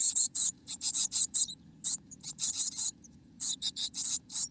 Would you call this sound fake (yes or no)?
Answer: yes